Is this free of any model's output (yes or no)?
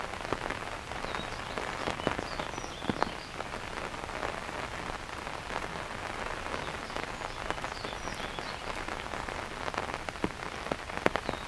yes